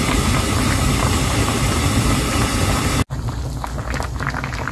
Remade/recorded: recorded